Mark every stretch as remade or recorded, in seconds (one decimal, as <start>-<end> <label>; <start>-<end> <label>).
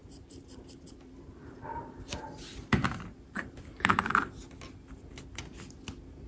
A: 0.0-3.8 remade; 3.8-6.3 recorded